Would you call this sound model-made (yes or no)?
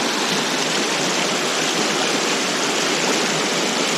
no